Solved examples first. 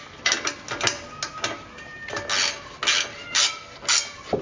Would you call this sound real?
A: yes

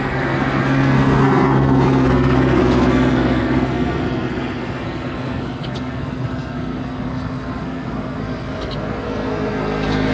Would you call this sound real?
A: no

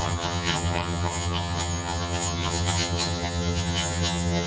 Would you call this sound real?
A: no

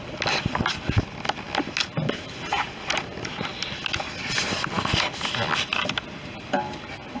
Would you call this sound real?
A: yes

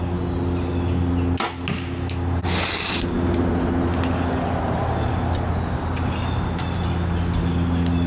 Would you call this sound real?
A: yes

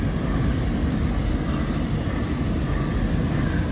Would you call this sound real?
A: yes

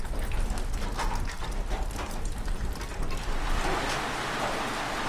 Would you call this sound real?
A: yes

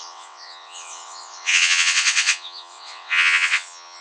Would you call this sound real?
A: no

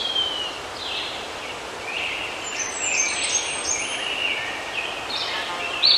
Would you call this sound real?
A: no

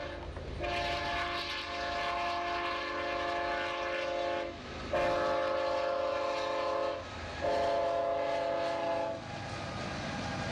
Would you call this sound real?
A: yes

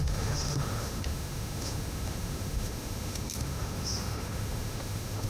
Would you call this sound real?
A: no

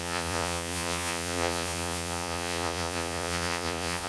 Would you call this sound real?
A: no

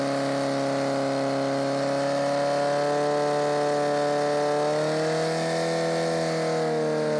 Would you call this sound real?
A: yes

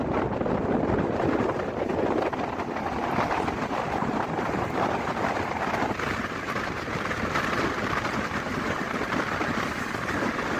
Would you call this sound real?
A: no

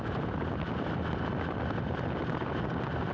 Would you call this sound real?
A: yes